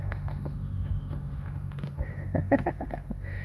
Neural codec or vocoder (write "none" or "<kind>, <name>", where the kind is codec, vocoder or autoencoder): autoencoder, DAC-VAE